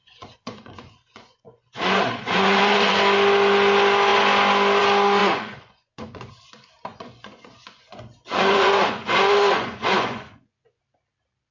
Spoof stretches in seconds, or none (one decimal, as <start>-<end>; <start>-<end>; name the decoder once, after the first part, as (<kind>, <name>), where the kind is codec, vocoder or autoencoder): 0.0-3.0 (vocoder, Vocos); 5.2-6.3; 6.9-10.8